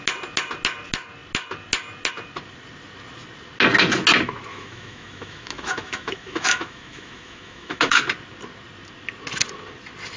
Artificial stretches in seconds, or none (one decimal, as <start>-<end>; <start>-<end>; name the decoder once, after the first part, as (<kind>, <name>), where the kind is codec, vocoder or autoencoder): 4.5-8.0 (autoencoder, DAC-VAE)

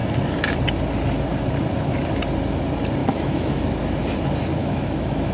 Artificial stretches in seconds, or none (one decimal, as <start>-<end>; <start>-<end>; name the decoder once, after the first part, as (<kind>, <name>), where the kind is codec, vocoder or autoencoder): 3.0-3.6 (autoencoder, DAC-VAE); 4.6-5.3